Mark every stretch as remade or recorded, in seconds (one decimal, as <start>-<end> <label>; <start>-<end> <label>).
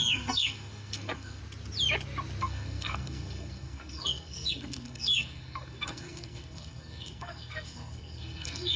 0.0-1.4 remade; 1.4-2.4 recorded; 2.4-8.8 remade